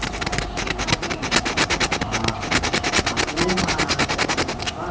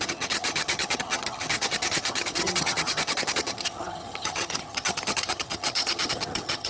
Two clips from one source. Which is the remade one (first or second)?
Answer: second